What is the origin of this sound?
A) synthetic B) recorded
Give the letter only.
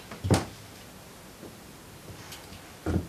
B